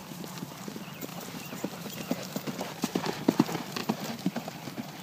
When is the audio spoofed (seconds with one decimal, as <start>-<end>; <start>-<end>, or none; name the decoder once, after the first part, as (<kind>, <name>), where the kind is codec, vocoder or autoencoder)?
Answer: 0.0-0.5 (vocoder, BigVGAN v2); 1.1-3.2; 3.8-4.4